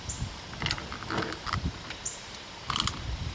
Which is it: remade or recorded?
recorded